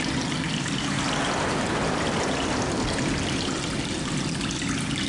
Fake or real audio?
real